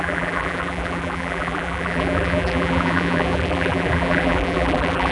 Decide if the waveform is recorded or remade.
remade